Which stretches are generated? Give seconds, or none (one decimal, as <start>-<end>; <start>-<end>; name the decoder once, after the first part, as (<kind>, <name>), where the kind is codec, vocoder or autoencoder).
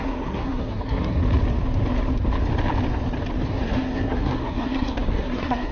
0.0-1.2 (codec, SNAC); 3.5-5.7